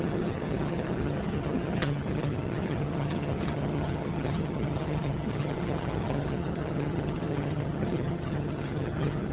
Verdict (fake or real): fake